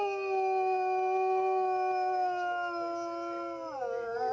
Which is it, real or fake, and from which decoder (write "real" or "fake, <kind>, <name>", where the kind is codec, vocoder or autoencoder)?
real